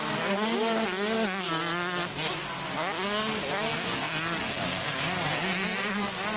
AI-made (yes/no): no